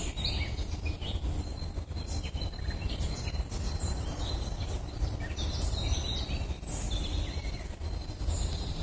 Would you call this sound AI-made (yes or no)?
no